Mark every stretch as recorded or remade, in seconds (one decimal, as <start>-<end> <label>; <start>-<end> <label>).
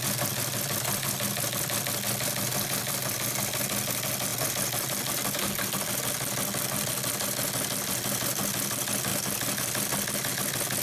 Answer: 0.0-10.8 recorded